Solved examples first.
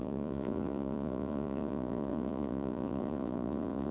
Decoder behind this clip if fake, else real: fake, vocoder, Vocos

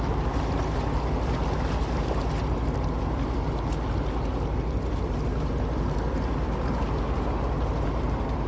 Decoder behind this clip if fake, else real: real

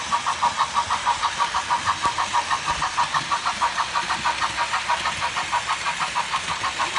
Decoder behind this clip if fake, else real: real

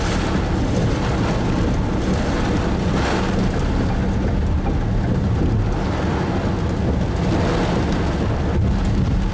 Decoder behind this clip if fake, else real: real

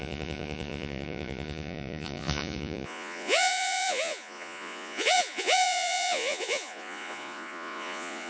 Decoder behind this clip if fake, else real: fake, vocoder, Vocos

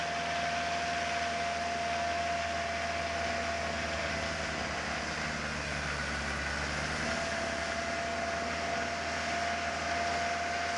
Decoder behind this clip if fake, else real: real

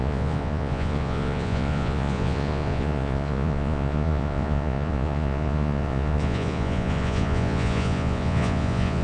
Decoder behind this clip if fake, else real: fake, vocoder, Vocos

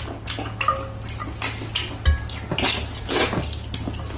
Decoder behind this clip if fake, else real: real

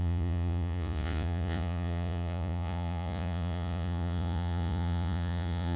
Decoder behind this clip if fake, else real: fake, vocoder, Vocos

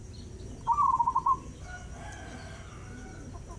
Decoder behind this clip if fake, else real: real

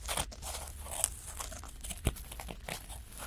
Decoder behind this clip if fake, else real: real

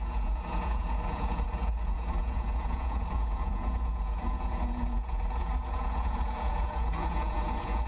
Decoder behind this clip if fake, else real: fake, vocoder, Vocos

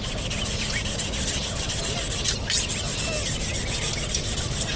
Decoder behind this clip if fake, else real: real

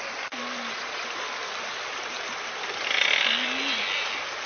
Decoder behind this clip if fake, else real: real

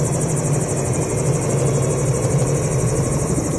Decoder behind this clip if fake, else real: real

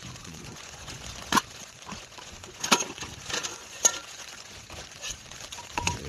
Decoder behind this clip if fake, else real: fake, vocoder, Vocos